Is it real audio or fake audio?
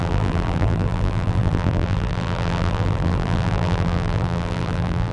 fake